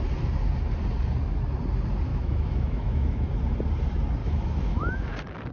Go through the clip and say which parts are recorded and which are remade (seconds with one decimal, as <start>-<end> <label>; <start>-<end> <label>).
0.0-2.1 recorded; 2.1-3.3 remade; 3.3-4.2 recorded; 4.2-5.1 remade; 5.1-5.5 recorded